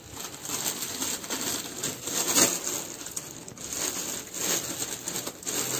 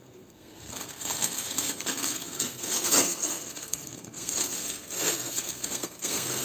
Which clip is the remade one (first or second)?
second